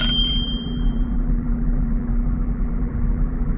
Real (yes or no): no